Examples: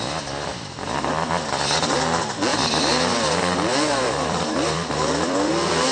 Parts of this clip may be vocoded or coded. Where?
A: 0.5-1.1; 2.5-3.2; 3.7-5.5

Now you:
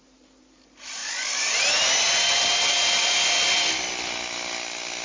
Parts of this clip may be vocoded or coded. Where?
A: none

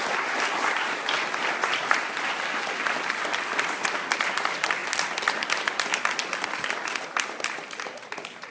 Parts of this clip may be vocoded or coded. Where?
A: none

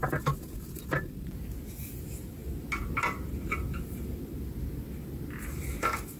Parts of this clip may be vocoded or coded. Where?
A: none